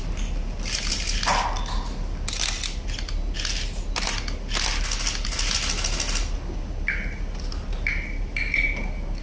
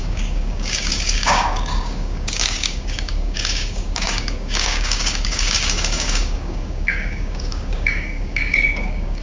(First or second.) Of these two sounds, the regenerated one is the second